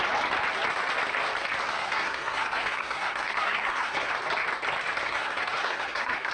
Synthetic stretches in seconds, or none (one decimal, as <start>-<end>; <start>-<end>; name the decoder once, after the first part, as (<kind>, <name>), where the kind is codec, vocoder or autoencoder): 1.7-4.1 (codec, SNAC); 5.0-6.3

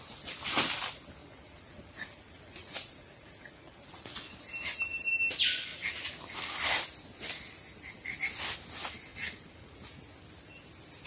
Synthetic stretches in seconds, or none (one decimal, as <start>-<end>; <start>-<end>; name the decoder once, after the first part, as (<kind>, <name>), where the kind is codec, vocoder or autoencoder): 1.2-4.1 (vocoder, Vocos); 5.7-6.2; 9.1-9.9

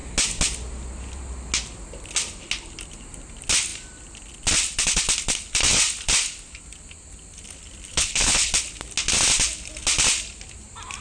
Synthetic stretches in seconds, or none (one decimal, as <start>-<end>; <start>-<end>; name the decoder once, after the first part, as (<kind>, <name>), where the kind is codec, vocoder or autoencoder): 7.9-8.5 (codec, HILCodec)

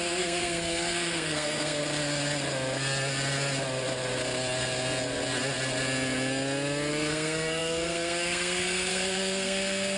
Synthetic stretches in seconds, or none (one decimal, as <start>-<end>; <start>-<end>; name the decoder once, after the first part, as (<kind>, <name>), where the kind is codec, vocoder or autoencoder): 0.0-1.8 (codec, SNAC); 6.9-10.0

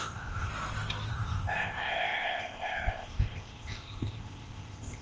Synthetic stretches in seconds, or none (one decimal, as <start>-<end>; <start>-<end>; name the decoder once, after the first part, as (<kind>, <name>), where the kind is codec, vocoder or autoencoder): 0.0-0.5 (codec, ZipCodec); 1.1-5.0

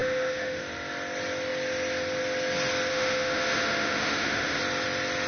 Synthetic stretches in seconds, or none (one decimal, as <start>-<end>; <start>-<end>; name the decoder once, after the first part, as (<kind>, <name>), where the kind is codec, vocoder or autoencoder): 0.0-0.6 (autoencoder, DAC-VAE); 2.9-4.6

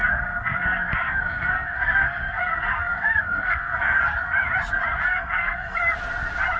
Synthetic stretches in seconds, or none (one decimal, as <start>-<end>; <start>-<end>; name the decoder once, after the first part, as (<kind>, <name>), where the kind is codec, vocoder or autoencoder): 0.0-4.0 (codec, SNAC); 5.1-5.8